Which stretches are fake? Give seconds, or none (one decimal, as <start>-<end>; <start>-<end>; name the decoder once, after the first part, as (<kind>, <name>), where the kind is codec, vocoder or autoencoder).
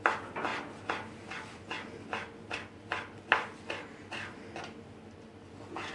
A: none